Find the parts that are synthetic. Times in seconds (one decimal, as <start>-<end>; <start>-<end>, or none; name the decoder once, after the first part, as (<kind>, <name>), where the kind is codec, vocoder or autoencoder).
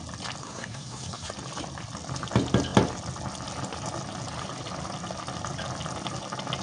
0.4-1.3 (codec, SNAC)